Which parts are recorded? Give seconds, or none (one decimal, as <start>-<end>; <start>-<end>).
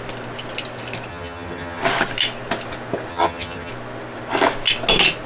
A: 0.0-1.1; 1.8-3.1; 3.7-5.3